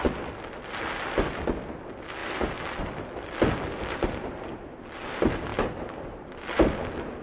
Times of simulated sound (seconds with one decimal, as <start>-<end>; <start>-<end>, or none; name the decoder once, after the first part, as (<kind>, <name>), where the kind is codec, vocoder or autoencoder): none